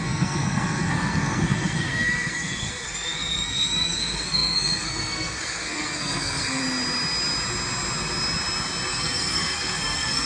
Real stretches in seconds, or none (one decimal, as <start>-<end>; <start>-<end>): 6.6-8.9